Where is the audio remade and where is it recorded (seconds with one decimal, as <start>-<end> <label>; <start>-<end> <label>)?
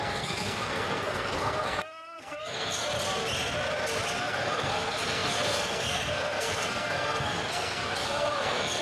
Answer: 0.0-2.8 remade; 2.8-4.2 recorded; 4.2-8.8 remade